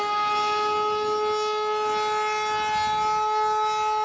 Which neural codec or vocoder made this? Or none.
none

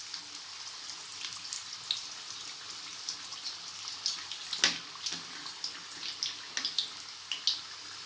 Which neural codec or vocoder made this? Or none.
none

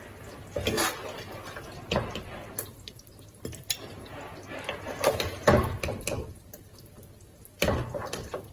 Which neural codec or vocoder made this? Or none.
none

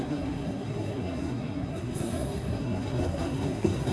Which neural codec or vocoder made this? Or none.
codec, SNAC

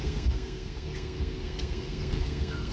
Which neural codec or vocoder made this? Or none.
codec, SNAC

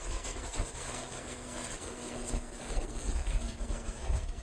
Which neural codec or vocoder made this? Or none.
codec, SNAC